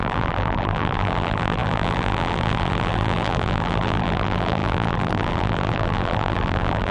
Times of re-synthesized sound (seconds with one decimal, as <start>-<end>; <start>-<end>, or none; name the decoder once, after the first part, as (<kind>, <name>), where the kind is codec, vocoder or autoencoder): 0.0-6.9 (vocoder, BigVGAN v2)